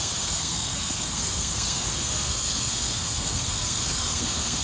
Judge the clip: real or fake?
fake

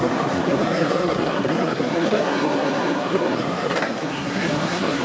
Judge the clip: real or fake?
fake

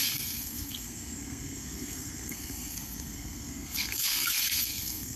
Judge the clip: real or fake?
fake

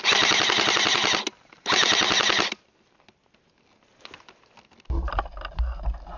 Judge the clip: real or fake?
real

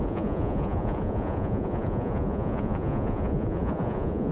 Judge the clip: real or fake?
fake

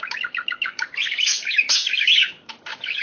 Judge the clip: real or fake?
fake